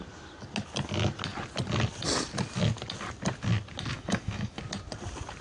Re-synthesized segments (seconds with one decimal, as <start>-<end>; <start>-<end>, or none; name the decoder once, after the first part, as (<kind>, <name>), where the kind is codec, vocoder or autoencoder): 3.9-4.6 (autoencoder, DAC-VAE)

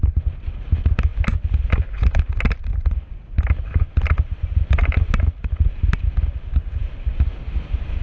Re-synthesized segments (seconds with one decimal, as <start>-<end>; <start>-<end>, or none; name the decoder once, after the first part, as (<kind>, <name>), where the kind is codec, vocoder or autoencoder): none

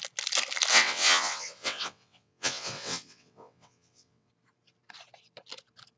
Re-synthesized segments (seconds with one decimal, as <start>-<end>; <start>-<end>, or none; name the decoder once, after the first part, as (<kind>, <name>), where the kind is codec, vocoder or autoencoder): 0.7-4.3 (vocoder, WaveNeXt)